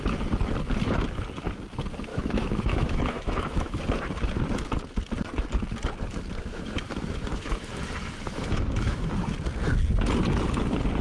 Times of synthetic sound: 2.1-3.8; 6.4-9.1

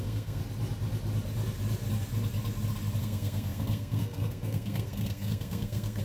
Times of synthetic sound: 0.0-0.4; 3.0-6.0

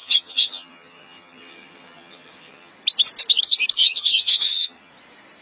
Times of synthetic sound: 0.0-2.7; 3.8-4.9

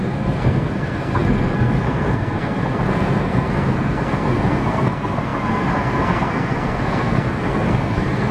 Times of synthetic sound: 0.0-8.3